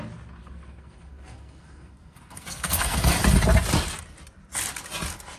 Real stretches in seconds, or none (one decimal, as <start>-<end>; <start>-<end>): 0.0-0.4; 3.1-5.4